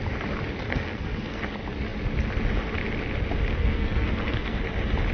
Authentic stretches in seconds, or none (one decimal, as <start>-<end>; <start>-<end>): 0.0-0.7; 1.4-3.5; 4.6-5.1